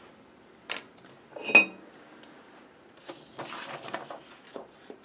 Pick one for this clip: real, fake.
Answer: real